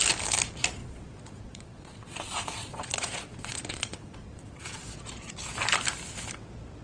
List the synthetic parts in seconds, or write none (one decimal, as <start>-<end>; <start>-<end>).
0.8-4.6